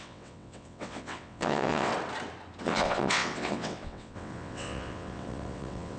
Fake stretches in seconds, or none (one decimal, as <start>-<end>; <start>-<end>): 0.0-1.9; 2.6-6.0